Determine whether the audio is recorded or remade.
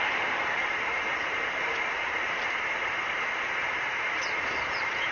remade